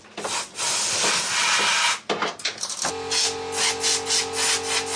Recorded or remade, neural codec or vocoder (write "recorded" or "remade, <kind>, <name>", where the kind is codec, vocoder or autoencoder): recorded